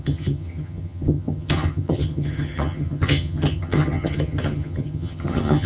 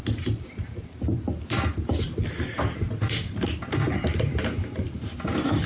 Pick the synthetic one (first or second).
first